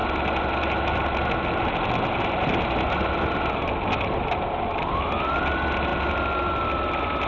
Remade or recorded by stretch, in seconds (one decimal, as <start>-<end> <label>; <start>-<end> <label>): 0.0-7.3 recorded